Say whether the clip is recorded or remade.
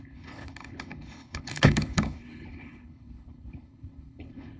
remade